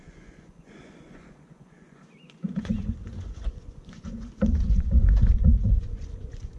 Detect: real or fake fake